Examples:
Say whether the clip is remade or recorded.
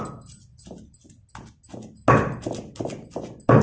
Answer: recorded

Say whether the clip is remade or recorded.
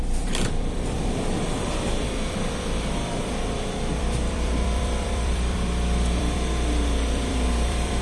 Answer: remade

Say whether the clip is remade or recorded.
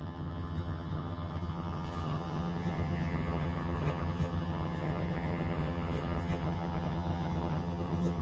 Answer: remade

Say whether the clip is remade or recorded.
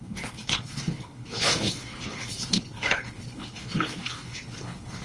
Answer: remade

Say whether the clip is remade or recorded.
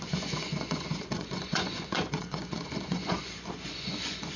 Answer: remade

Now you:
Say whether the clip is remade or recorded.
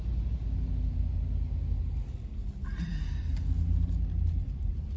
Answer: recorded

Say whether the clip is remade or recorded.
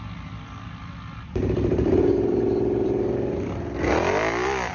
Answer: remade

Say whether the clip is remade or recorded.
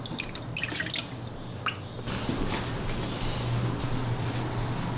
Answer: recorded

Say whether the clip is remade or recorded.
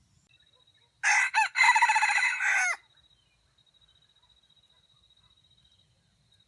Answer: recorded